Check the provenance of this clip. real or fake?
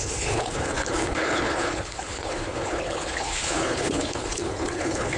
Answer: fake